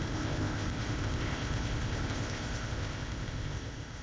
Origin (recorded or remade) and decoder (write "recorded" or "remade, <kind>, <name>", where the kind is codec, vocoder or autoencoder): remade, codec, ZipCodec